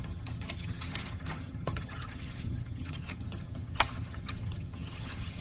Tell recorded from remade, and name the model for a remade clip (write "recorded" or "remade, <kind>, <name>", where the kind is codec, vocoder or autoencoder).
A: remade, vocoder, HiFi-GAN